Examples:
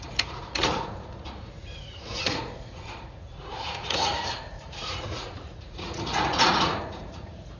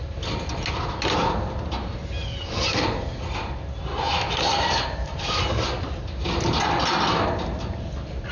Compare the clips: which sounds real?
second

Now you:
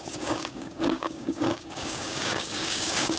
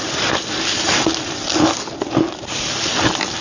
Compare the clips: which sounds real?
second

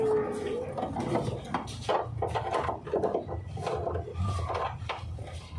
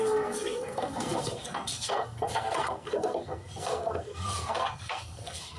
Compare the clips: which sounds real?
first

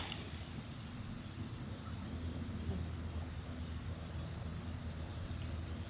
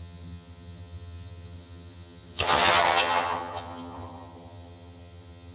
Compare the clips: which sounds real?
first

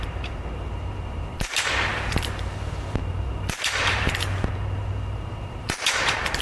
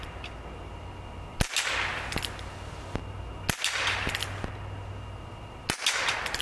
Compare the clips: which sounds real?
second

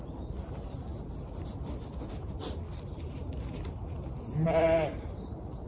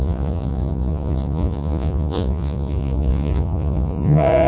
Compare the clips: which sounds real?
first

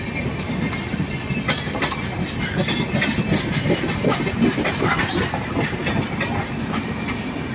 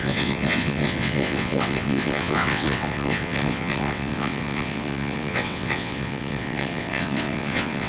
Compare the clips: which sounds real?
first